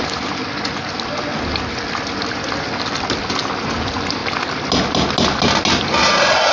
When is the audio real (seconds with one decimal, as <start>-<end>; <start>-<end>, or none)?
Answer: 0.0-6.5